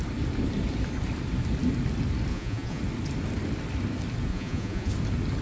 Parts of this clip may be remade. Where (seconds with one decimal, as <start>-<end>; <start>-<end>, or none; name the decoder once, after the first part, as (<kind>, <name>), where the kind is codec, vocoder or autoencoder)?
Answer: 2.3-2.8 (vocoder, Vocos); 4.3-4.9

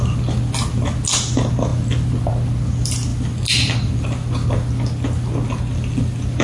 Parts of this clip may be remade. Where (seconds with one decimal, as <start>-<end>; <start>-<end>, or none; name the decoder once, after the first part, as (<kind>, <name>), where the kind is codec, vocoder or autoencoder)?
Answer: none

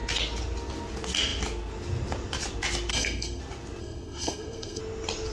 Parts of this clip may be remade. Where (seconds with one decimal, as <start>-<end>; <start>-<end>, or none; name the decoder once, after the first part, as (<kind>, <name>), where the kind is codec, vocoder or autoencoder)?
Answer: 2.9-3.4 (codec, SNAC); 3.8-4.8

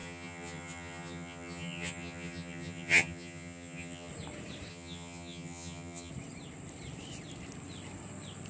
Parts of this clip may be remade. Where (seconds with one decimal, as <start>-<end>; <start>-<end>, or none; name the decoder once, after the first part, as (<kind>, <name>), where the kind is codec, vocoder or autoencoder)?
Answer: 0.0-4.1 (vocoder, HiFi-GAN); 4.7-6.1

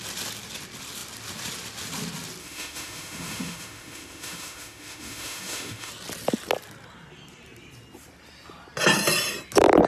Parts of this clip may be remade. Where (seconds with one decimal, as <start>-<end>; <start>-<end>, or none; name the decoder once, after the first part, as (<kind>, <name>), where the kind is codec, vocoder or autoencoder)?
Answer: 2.4-5.9 (autoencoder, DAC-VAE)

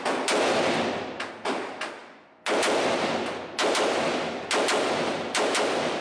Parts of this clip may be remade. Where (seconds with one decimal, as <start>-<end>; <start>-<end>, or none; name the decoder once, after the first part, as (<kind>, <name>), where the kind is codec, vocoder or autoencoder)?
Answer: none

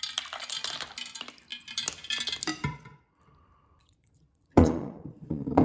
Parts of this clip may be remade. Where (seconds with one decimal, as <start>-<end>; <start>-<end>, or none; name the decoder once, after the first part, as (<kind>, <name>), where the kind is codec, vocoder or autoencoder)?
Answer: 2.7-3.2 (vocoder, Vocos); 3.8-5.6